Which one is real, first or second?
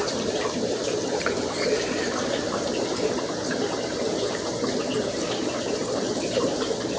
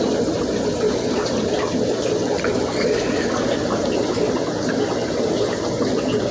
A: second